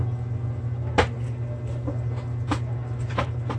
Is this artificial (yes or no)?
no